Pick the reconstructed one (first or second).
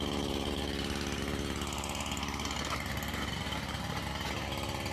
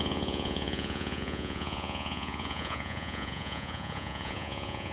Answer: second